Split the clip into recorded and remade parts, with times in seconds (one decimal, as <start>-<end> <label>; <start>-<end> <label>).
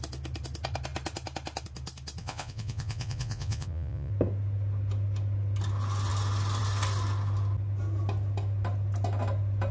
0.0-2.2 recorded; 2.2-4.1 remade; 4.1-9.7 recorded